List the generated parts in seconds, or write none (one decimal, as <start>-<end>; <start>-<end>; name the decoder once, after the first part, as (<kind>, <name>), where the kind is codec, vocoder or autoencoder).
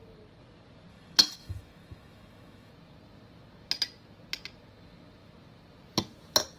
0.9-2.7 (autoencoder, DAC-VAE)